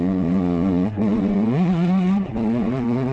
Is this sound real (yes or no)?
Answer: no